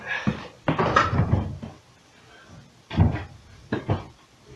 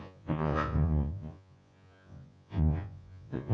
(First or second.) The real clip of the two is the first